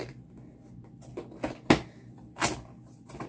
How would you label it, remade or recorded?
recorded